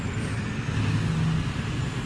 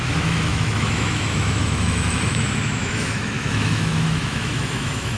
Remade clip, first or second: second